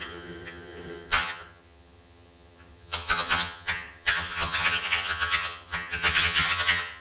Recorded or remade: remade